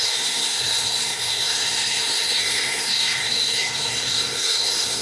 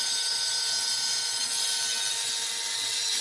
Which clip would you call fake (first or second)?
first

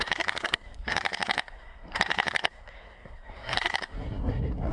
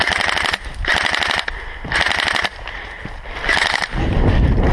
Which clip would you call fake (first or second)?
first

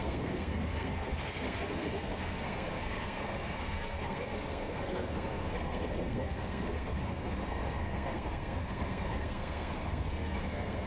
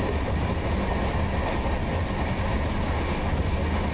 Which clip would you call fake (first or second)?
first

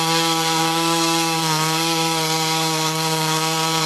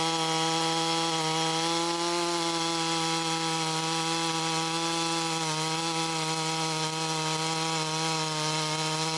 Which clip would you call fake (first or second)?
first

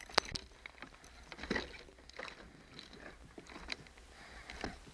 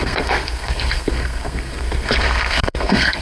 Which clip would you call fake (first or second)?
second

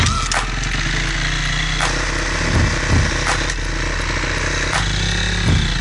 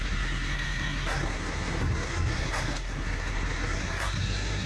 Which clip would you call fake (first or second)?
second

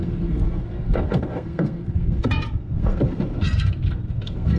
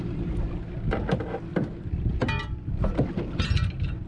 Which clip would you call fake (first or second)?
first